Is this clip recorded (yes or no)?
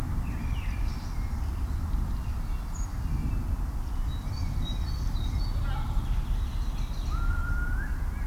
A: yes